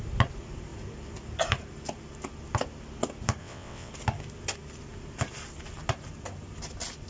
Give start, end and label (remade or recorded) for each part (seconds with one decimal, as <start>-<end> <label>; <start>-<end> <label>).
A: 0.0-3.4 recorded; 3.4-3.9 remade; 3.9-7.1 recorded